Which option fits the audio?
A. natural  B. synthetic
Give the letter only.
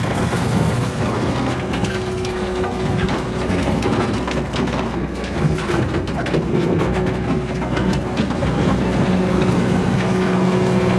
B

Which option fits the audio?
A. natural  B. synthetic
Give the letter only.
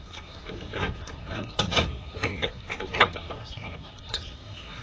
B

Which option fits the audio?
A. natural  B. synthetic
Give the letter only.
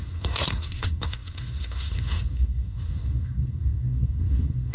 B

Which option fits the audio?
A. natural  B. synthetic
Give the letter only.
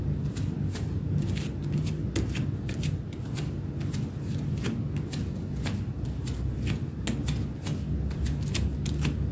A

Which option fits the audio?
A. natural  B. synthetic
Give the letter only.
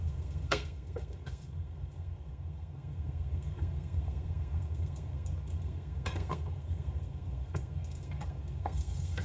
B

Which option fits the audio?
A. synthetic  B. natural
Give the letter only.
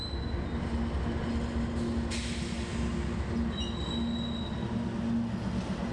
B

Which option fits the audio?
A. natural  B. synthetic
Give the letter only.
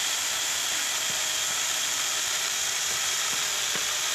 A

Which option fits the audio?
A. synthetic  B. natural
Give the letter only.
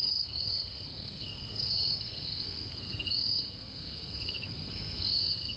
A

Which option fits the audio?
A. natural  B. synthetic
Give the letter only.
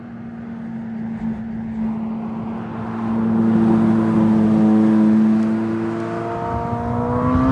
A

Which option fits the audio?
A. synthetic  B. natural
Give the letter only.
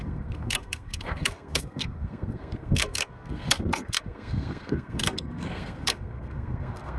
A